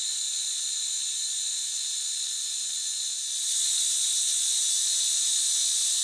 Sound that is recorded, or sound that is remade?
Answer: recorded